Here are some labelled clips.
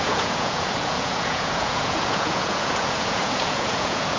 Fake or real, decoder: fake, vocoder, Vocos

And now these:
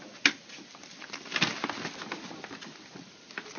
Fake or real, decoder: real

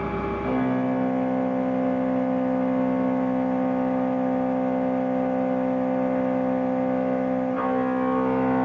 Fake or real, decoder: real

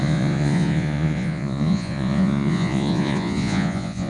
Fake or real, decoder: fake, vocoder, Vocos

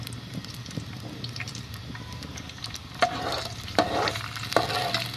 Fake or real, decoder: real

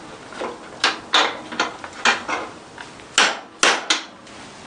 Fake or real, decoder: real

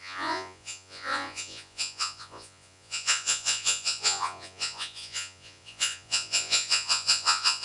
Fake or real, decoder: fake, vocoder, Vocos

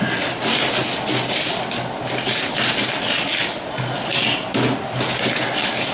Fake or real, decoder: real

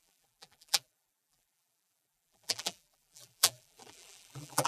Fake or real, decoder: fake, vocoder, BigVGAN v2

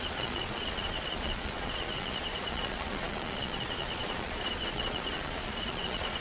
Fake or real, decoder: fake, vocoder, Vocos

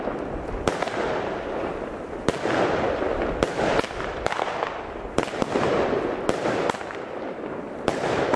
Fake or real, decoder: real